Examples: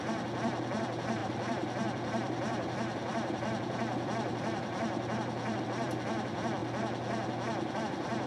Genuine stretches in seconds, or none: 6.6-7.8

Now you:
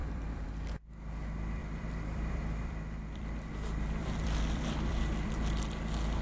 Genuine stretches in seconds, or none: 0.5-1.6; 5.3-6.2

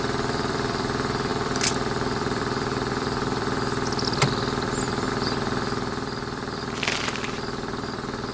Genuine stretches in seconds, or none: none

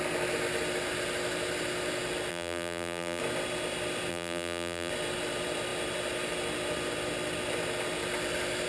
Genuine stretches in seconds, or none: 0.0-2.3; 3.2-4.1; 4.9-8.7

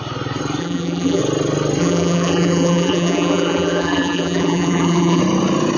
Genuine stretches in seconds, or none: 0.0-0.6; 1.2-1.8; 5.2-5.8